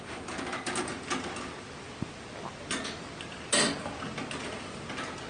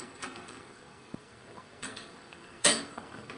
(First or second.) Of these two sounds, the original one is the first